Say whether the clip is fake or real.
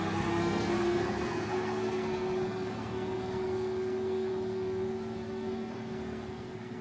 fake